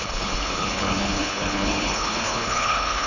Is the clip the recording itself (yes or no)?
no